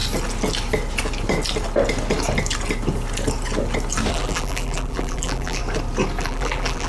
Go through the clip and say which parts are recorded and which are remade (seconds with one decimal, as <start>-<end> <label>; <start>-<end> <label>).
0.0-4.1 recorded; 4.1-5.6 remade; 5.6-6.2 recorded; 6.2-6.9 remade